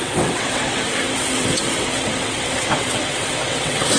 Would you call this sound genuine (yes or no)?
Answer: no